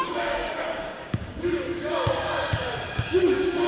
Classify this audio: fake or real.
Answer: fake